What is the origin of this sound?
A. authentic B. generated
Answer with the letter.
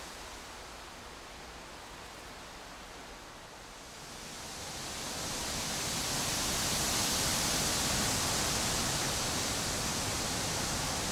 A